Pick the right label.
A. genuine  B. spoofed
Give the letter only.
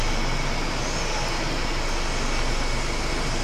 A